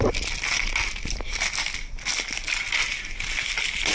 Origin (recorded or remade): recorded